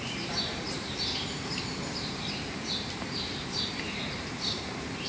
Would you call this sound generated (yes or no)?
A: yes